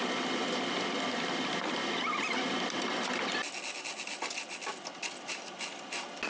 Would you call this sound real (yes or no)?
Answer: yes